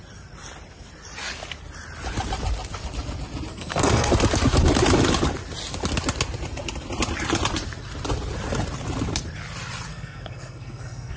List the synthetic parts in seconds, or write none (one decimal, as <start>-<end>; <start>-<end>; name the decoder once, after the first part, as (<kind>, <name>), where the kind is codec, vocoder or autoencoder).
3.5-4.1 (codec, SNAC); 9.9-11.2